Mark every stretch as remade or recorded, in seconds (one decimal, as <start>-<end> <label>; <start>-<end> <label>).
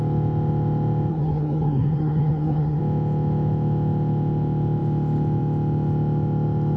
0.0-1.1 recorded; 1.1-2.8 remade; 2.8-6.8 recorded